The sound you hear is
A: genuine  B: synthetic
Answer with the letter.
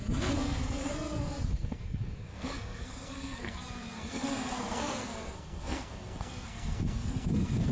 B